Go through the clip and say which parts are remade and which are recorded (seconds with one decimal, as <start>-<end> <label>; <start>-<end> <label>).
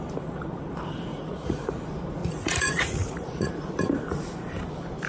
0.0-1.1 recorded; 1.1-1.7 remade; 1.7-2.2 recorded; 2.2-3.5 remade; 3.5-5.1 recorded